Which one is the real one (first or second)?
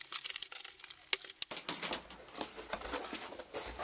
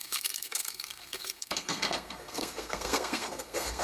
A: first